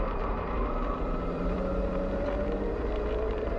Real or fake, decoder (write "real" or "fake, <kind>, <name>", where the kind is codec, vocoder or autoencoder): fake, vocoder, BigVGAN v2